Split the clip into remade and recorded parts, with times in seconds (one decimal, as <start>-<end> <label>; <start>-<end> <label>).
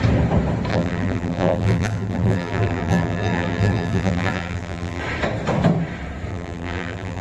0.0-0.7 recorded; 0.7-5.0 remade; 5.0-6.3 recorded; 6.3-7.2 remade